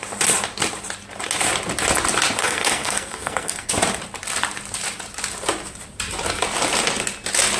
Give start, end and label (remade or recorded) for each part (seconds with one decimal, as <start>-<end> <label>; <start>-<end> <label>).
0.0-2.4 recorded; 2.4-3.7 remade; 3.7-7.6 recorded